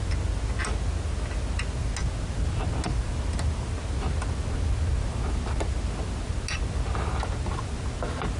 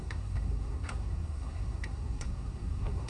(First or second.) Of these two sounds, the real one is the first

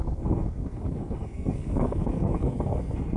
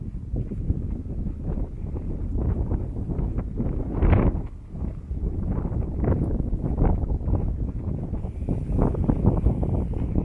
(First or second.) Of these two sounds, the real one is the second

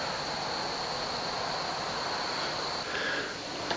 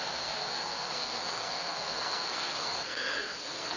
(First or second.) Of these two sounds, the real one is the first